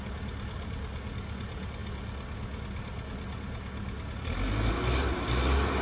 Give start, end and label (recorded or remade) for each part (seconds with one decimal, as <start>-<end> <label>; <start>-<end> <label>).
0.0-5.8 recorded